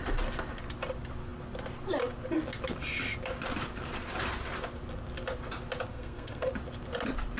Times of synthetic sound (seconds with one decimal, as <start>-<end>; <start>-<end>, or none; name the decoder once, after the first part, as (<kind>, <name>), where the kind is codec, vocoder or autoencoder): 5.9-6.5 (codec, SNAC)